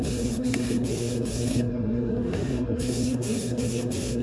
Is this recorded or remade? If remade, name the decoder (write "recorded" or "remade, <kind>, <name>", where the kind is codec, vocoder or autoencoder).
remade, codec, SNAC